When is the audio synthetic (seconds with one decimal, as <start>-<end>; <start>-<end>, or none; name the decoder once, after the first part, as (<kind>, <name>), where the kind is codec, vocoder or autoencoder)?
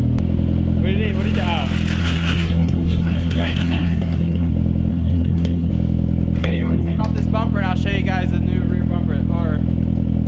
2.0-4.5 (codec, SNAC); 4.9-5.7; 6.4-7.0